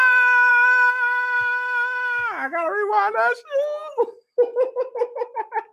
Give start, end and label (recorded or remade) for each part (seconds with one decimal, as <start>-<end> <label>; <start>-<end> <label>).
0.0-0.5 recorded; 0.5-3.1 remade; 3.1-5.7 recorded